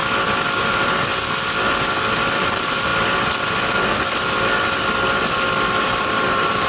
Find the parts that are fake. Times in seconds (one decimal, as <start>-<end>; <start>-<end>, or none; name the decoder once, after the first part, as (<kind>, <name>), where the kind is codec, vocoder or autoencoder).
0.6-1.1 (vocoder, BigVGAN v2); 2.4-2.9; 5.8-6.7